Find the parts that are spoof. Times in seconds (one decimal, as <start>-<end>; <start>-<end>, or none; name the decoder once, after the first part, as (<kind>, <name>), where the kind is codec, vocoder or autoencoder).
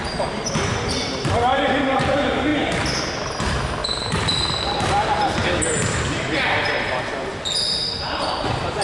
0.0-8.8 (vocoder, BigVGAN v2)